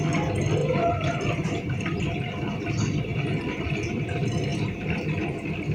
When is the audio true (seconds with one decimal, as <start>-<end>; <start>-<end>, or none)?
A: 0.0-0.6; 2.0-3.1; 3.7-4.5; 5.1-5.7